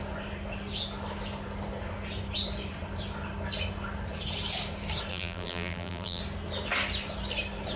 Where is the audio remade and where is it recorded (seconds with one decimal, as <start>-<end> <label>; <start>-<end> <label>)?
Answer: 0.0-5.1 recorded; 5.1-6.2 remade; 6.2-7.8 recorded